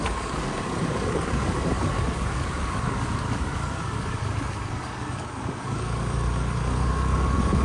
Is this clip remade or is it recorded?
remade